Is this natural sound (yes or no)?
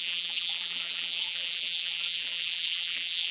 no